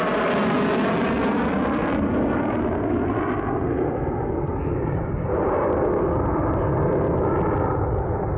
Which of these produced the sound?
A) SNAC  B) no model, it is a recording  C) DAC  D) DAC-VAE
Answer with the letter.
B